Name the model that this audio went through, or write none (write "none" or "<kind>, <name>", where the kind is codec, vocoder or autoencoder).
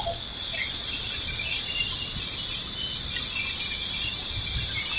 none